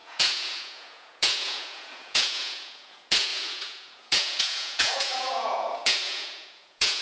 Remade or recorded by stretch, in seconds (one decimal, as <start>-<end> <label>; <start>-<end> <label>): 0.0-7.0 remade